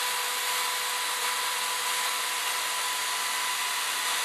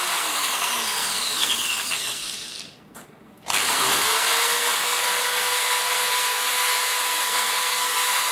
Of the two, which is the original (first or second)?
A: first